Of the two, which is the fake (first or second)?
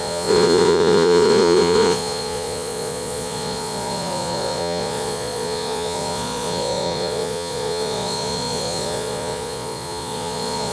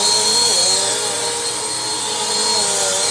first